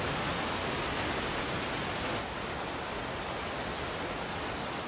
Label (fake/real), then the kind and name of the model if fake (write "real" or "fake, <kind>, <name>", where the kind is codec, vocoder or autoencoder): real